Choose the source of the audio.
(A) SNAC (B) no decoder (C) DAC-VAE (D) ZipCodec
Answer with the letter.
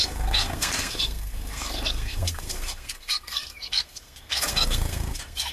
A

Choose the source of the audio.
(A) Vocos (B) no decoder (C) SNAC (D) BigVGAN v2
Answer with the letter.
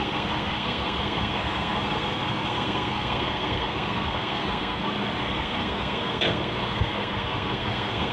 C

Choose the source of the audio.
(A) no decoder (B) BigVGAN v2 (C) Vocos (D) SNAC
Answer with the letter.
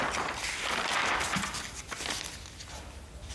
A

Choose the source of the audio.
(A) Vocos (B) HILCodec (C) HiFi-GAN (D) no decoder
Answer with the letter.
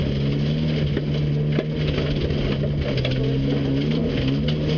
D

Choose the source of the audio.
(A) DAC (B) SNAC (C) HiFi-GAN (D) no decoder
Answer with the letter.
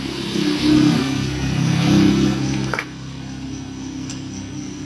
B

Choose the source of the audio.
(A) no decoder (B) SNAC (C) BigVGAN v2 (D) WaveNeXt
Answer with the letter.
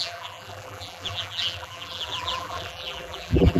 C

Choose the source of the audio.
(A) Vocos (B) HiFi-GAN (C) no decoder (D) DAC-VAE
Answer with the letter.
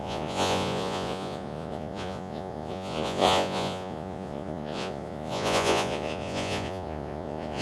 A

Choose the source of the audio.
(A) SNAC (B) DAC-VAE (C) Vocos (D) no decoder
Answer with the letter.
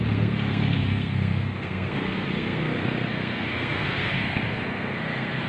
A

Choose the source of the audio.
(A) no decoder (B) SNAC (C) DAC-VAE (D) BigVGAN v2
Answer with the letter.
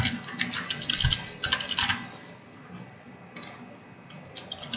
A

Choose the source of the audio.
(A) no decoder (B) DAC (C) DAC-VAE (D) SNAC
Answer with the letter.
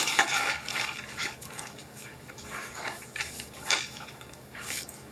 B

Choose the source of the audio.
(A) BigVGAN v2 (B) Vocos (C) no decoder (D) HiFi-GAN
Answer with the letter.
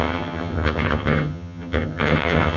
D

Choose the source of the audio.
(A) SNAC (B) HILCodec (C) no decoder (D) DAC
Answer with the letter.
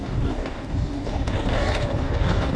D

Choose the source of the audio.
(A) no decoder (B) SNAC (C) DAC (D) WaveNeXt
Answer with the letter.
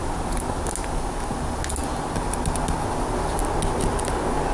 A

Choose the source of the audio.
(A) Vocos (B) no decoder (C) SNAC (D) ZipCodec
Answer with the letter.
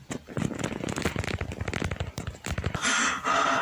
B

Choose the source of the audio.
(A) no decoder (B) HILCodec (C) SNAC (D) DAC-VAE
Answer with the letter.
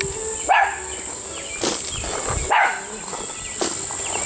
A